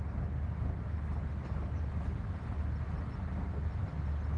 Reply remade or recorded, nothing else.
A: recorded